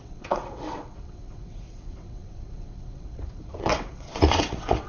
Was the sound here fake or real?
fake